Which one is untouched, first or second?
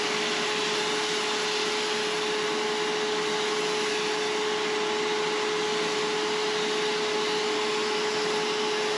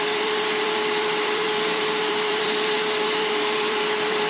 first